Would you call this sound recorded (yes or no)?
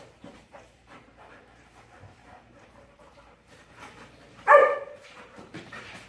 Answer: no